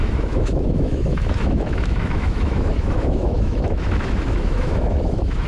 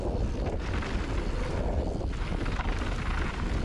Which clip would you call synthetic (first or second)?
first